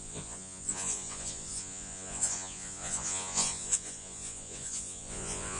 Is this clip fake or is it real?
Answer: fake